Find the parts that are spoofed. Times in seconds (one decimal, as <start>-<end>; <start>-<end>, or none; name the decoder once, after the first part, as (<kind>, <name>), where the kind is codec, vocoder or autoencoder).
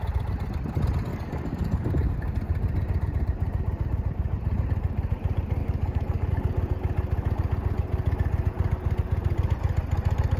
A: 1.1-2.1 (codec, DAC); 5.6-6.3